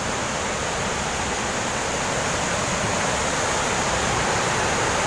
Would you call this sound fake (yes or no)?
no